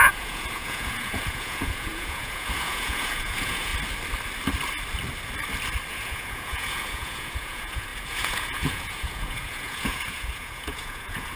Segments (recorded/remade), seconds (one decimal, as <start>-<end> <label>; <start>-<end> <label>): 0.0-3.7 remade; 3.7-5.9 recorded; 5.9-11.4 remade

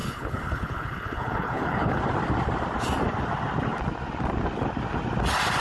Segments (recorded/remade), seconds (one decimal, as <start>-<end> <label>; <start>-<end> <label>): 0.0-2.0 remade; 2.0-5.6 recorded

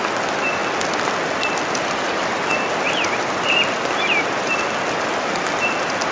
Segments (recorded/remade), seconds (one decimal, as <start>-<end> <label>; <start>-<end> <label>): 0.0-6.1 recorded

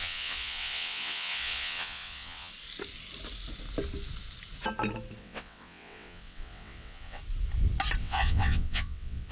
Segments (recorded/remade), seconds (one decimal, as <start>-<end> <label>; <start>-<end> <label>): 0.0-2.5 remade; 2.5-5.2 recorded; 5.2-7.2 remade; 7.2-8.0 recorded; 8.0-9.3 remade

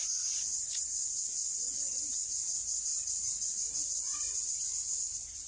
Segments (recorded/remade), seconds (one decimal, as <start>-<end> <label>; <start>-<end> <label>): 0.0-1.4 recorded; 1.4-2.0 remade; 2.0-5.5 recorded

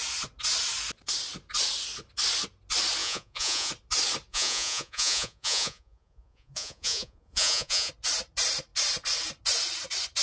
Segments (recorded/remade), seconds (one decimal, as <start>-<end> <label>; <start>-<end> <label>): 0.0-3.0 recorded; 3.0-3.7 remade; 3.7-4.3 recorded; 4.3-7.9 remade; 7.9-10.2 recorded

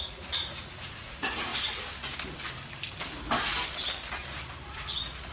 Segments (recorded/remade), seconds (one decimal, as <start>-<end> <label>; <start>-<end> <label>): 0.0-1.5 remade; 1.5-4.7 recorded; 4.7-5.3 remade